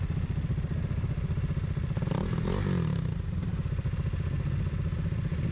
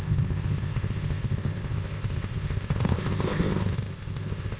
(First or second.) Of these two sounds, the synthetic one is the second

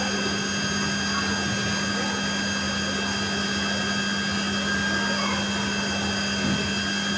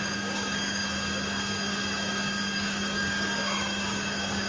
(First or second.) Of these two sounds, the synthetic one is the second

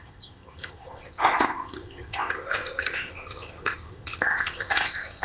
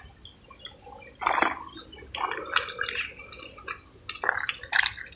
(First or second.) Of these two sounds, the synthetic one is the first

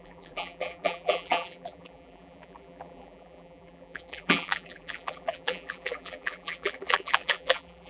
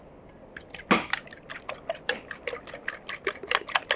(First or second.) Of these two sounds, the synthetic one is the first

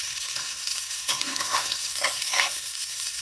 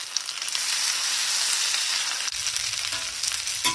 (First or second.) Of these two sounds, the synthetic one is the first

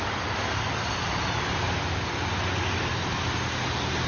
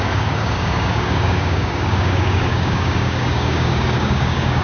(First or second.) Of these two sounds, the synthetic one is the second